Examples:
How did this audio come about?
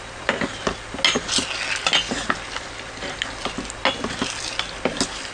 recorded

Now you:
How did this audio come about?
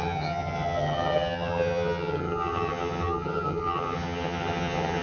remade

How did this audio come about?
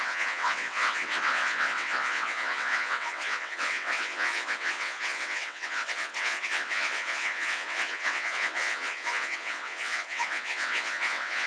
remade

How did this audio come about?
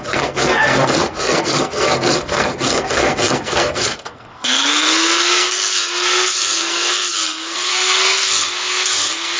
remade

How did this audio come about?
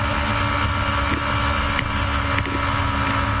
recorded